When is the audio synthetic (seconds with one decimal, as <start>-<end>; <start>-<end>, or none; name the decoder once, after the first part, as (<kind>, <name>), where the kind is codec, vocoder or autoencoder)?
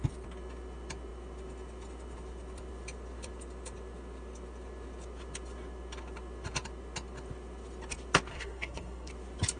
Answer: 8.3-9.1 (codec, SNAC)